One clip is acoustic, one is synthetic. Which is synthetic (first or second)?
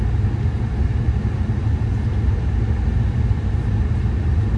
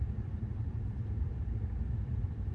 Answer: second